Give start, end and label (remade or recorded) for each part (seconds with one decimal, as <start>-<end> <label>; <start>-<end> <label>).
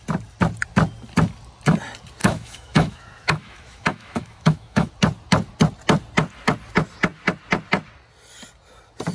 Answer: 0.0-2.2 recorded; 2.2-4.9 remade; 4.9-9.1 recorded